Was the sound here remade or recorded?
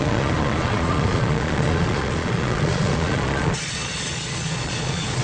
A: remade